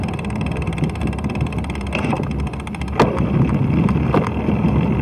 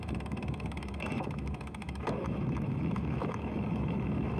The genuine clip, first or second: first